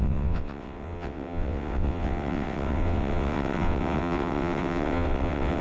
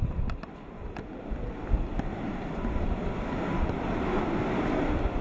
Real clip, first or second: second